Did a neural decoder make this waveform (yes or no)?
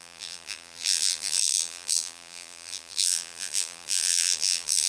yes